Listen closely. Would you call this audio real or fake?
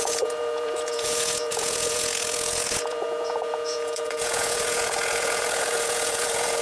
fake